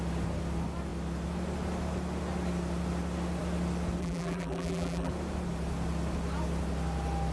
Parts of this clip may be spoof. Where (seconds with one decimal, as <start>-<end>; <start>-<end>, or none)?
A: 4.0-5.1